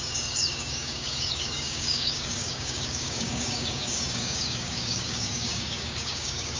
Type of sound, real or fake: fake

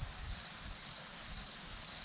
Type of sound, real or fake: real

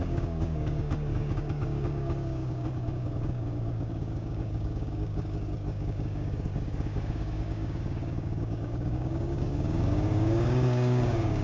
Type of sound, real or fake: fake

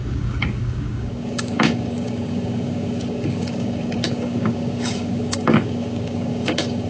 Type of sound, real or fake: fake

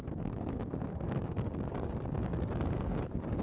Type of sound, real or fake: fake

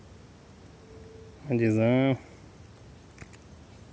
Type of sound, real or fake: real